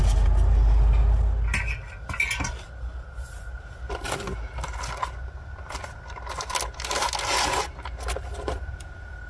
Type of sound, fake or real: real